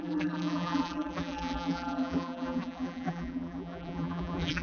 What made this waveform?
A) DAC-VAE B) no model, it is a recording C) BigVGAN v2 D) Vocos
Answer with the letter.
C